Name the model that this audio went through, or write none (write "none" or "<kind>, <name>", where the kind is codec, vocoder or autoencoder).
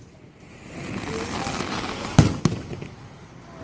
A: none